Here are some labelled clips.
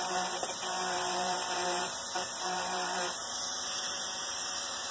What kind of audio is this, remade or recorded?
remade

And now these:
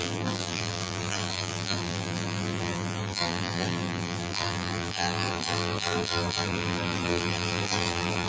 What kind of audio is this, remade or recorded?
remade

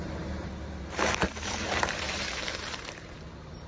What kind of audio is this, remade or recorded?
remade